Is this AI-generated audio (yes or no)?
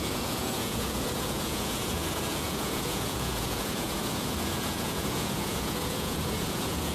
yes